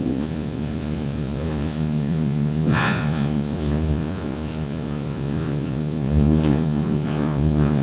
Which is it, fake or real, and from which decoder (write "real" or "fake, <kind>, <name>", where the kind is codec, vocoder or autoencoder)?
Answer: fake, vocoder, Vocos